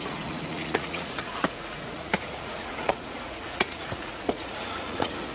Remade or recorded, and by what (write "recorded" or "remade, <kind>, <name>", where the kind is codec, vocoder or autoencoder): remade, vocoder, Vocos